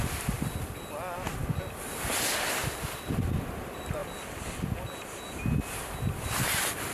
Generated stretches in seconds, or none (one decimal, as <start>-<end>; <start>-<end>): none